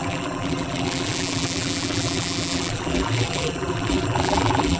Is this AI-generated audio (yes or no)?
yes